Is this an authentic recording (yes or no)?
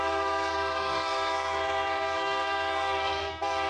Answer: no